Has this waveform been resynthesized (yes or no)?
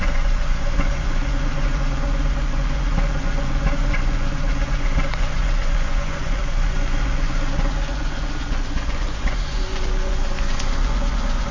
yes